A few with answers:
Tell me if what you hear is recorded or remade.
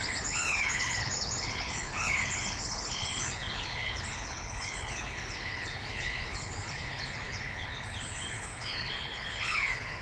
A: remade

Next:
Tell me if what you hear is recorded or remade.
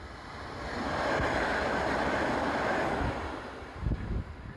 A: recorded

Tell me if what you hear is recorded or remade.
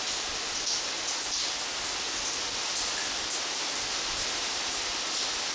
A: recorded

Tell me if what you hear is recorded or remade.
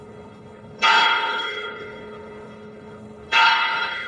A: remade